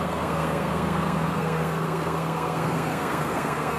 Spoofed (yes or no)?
yes